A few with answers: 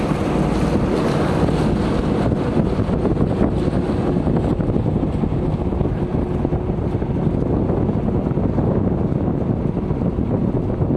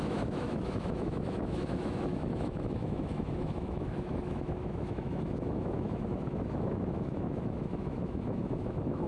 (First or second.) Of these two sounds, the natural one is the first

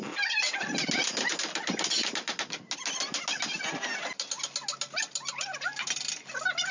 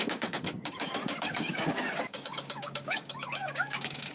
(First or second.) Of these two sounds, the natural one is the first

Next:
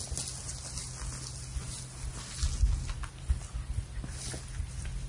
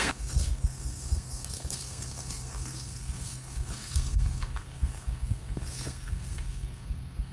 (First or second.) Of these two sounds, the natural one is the first